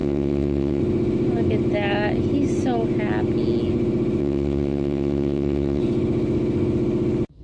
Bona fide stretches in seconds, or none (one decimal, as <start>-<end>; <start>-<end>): 0.8-4.2; 5.8-7.4